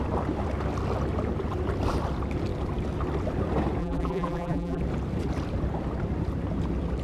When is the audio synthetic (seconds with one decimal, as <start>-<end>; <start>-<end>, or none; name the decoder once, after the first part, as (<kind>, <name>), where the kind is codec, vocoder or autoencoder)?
3.8-4.8 (vocoder, BigVGAN v2)

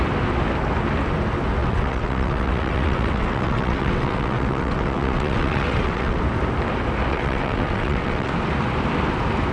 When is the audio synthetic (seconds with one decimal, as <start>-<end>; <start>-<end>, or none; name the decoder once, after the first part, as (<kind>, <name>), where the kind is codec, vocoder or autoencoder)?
1.6-6.2 (vocoder, WaveNeXt); 7.1-8.3

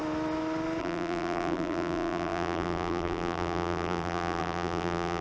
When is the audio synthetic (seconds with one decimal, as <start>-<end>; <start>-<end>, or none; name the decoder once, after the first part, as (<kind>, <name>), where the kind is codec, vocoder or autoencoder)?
0.8-5.2 (vocoder, BigVGAN v2)